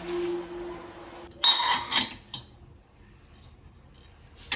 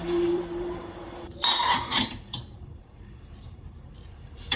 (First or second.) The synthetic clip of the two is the second